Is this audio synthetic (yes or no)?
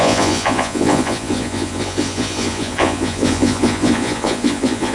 yes